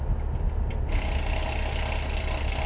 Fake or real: real